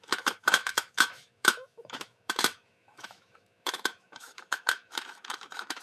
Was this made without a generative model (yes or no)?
no